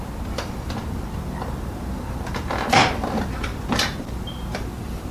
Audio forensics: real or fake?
fake